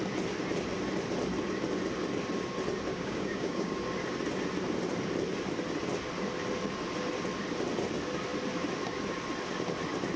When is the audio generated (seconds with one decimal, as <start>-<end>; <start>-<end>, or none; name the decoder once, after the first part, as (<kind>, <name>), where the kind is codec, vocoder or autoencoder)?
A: 2.9-3.8 (codec, DAC)

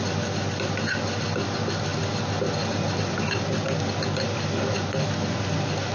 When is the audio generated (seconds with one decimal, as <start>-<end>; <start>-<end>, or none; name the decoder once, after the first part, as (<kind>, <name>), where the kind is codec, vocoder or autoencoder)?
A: none